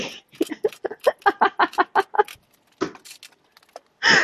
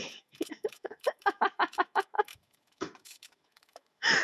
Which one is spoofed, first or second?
second